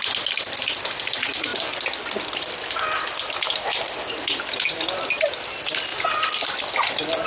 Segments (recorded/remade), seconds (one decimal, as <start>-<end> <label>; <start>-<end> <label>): 0.0-7.3 recorded